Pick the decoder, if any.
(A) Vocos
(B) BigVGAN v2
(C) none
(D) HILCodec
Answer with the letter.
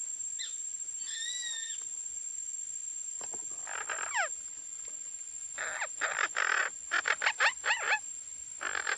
C